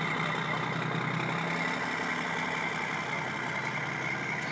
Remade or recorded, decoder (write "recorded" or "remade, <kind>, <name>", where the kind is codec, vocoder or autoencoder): recorded